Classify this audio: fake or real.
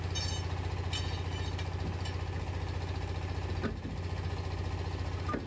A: real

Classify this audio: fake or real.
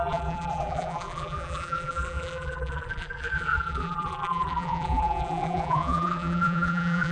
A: fake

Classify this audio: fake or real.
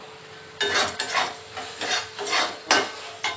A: real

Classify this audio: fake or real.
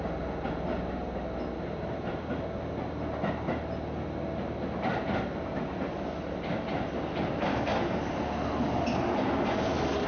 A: real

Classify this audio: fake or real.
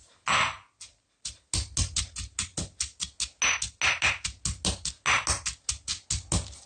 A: real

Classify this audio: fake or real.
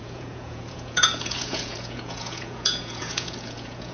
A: fake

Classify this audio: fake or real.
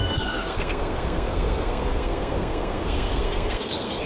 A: fake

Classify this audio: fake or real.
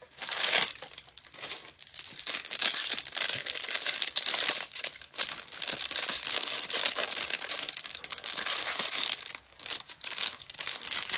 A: fake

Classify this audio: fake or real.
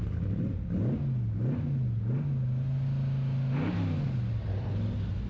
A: real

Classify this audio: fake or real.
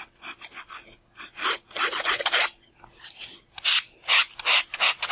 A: real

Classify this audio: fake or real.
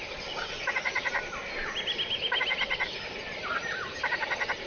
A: real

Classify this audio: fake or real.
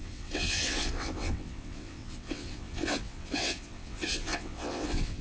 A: fake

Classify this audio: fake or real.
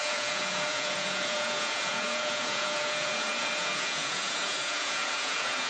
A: fake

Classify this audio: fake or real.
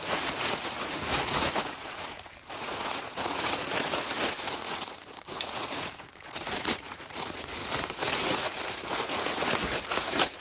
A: fake